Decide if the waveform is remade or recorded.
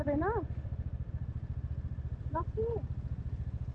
recorded